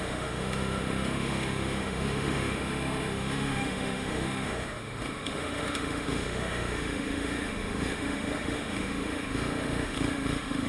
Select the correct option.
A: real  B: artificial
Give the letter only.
B